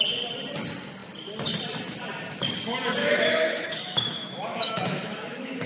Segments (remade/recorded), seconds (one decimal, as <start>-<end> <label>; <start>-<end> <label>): 0.0-3.0 recorded; 3.0-5.7 remade